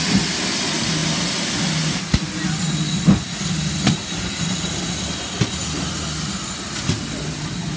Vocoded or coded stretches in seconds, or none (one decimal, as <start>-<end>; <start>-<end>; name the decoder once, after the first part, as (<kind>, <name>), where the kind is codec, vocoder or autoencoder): none